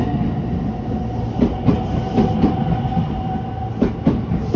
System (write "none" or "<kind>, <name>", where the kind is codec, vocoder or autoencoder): none